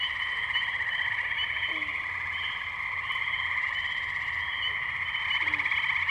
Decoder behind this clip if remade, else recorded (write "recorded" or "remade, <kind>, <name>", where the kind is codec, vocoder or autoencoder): recorded